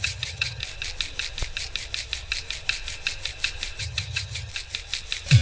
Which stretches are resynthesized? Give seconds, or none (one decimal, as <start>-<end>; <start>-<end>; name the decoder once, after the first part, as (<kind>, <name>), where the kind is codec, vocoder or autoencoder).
0.0-0.6 (vocoder, HiFi-GAN); 3.8-4.5